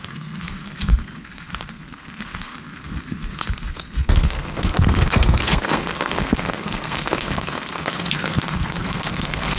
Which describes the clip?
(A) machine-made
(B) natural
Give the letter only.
A